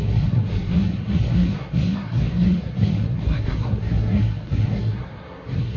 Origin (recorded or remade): remade